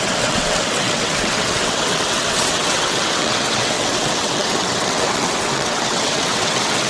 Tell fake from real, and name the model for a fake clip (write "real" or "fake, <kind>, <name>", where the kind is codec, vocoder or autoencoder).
fake, vocoder, WaveNeXt